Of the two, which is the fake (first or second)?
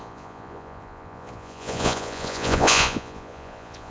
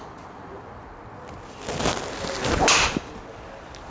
first